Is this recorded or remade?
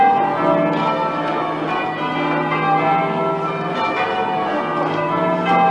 recorded